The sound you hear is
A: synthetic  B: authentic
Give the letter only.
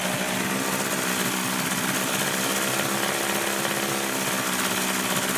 B